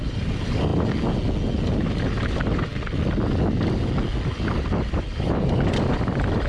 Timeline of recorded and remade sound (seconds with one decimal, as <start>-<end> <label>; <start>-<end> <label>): 0.0-0.7 remade; 0.7-2.3 recorded; 2.3-2.7 remade; 2.7-4.5 recorded; 4.5-6.5 remade